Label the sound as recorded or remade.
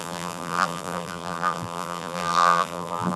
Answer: remade